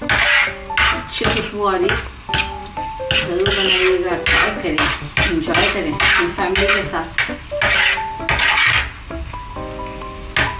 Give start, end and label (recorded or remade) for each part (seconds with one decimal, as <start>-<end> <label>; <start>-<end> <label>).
0.0-10.6 recorded